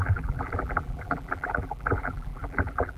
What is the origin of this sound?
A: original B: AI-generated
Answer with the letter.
B